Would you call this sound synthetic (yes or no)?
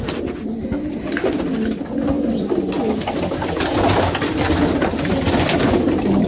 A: no